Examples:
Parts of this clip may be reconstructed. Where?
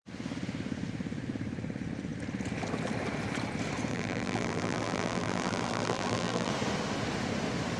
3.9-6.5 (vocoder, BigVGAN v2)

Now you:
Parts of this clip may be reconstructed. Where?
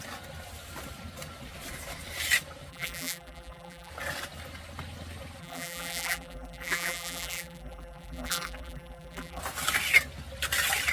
2.7-3.9 (vocoder, BigVGAN v2); 5.4-9.4